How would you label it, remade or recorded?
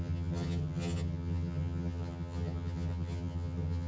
remade